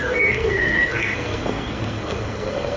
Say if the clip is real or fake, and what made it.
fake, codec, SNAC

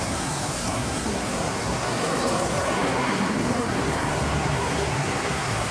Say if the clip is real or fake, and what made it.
fake, codec, SNAC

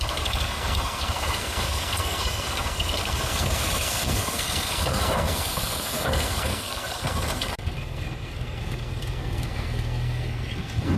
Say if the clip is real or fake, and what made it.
fake, codec, SNAC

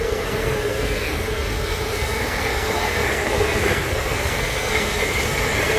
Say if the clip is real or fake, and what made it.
fake, codec, SNAC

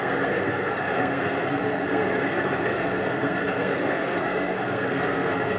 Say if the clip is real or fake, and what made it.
fake, codec, SNAC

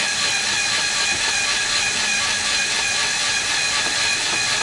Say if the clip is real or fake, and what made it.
real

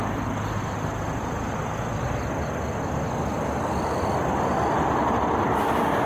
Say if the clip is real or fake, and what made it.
real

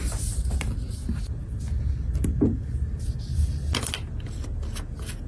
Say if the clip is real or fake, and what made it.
real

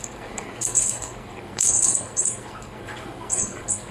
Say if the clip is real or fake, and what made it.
fake, codec, SNAC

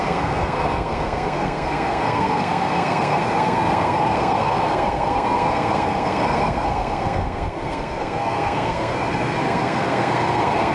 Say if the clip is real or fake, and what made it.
fake, codec, SNAC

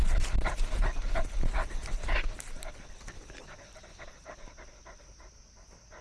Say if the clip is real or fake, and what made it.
real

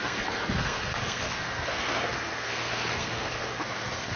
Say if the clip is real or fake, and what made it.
fake, codec, SNAC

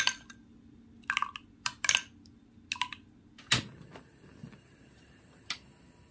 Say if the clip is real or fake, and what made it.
real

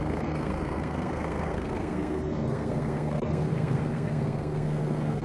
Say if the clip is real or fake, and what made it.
fake, codec, SNAC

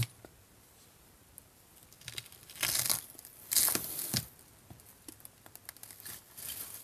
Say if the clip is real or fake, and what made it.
real